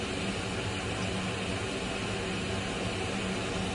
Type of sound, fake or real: real